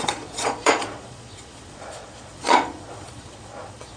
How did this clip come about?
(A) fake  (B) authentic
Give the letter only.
A